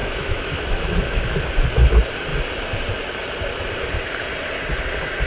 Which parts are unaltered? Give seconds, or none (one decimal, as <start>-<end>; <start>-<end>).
1.4-5.3